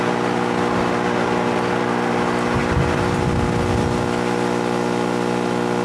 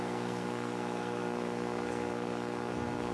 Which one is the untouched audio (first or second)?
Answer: first